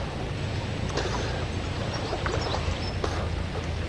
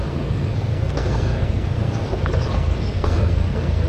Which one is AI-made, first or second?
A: second